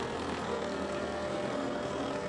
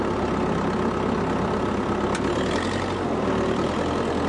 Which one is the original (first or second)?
second